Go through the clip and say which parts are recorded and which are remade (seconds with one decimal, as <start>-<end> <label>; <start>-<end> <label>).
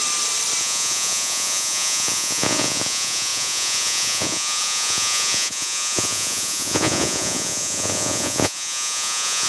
0.0-0.6 recorded; 0.6-9.5 remade